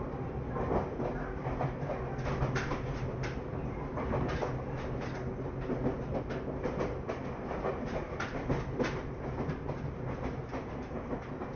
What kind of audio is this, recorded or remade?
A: recorded